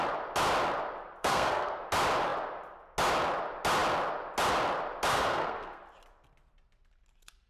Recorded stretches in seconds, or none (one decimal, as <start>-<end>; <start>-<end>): 0.0-1.2; 1.8-5.1; 5.8-7.5